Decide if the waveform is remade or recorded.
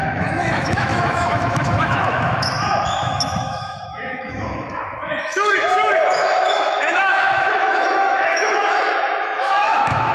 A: remade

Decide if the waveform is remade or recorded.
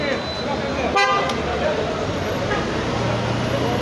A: recorded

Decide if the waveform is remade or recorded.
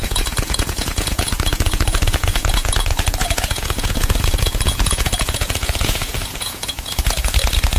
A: remade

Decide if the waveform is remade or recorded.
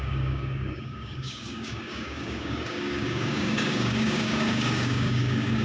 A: remade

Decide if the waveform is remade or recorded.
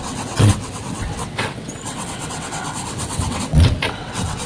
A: remade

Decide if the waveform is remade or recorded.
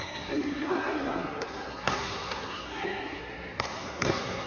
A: remade